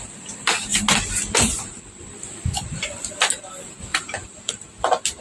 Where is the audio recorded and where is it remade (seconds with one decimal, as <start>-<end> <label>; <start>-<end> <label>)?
0.0-3.9 recorded; 3.9-4.5 remade; 4.5-5.2 recorded